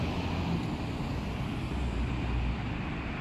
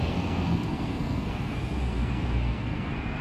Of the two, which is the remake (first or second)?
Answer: second